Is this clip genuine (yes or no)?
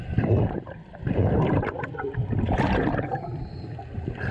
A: no